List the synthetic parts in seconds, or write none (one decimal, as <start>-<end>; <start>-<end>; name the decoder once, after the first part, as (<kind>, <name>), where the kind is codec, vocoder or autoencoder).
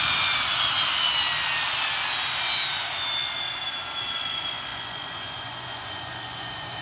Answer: 0.0-0.5 (vocoder, Vocos); 4.0-6.8